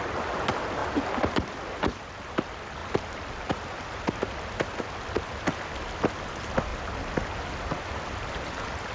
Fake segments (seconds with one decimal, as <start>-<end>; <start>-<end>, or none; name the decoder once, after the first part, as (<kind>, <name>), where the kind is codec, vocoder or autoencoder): none